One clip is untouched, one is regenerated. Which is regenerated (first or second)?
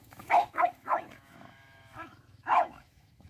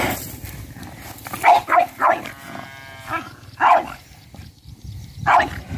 first